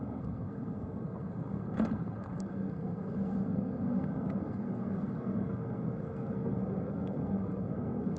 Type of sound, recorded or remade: remade